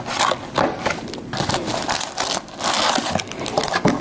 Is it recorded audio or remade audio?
recorded